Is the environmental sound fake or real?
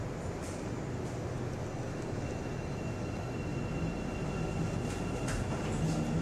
real